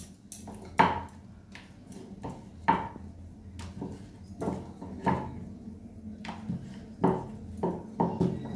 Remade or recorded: recorded